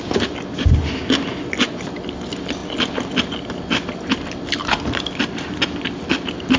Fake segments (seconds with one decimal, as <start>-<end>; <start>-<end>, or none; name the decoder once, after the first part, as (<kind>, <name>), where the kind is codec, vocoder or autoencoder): none